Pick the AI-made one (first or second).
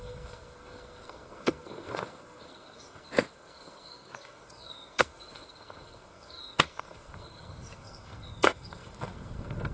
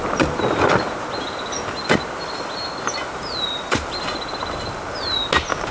first